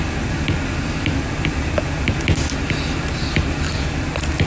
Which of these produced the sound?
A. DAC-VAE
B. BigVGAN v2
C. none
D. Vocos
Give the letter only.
C